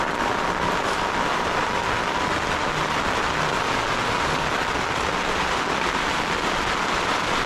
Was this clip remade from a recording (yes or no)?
no